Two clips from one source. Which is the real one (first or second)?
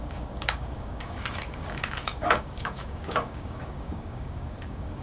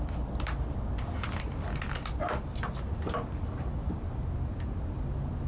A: second